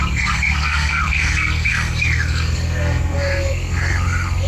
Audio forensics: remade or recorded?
remade